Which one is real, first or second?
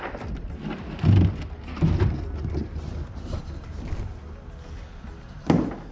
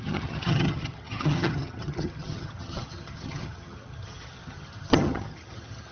first